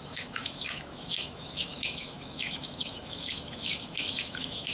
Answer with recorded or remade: remade